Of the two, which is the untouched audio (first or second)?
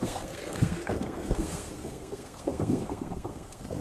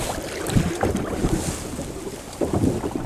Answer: second